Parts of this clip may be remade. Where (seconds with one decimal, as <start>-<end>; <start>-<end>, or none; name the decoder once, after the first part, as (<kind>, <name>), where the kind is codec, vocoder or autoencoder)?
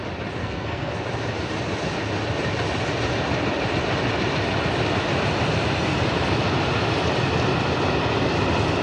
0.4-0.9 (codec, SNAC)